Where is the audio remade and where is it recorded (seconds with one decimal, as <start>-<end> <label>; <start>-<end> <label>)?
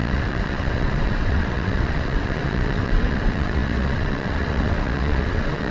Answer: 0.0-5.7 remade